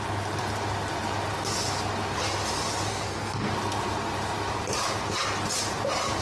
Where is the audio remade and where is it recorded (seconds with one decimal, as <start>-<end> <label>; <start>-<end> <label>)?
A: 0.0-2.9 recorded; 2.9-3.5 remade; 3.5-6.2 recorded